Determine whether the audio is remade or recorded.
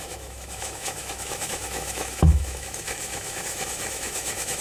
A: remade